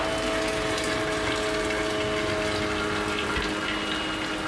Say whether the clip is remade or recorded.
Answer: recorded